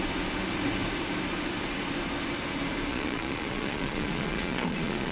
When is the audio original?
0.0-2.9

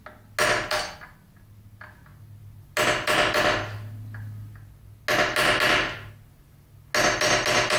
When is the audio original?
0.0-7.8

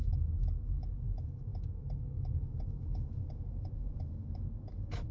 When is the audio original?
none